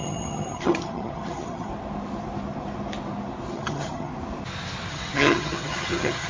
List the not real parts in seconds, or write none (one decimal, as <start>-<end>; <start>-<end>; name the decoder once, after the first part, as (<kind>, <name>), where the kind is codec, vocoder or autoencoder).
0.0-1.7 (vocoder, HiFi-GAN); 3.5-4.1; 4.9-6.3